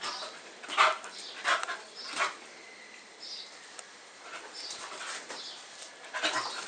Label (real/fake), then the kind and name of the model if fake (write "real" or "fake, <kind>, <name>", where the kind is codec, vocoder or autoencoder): real